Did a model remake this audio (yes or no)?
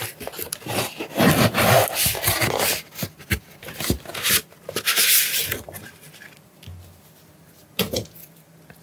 no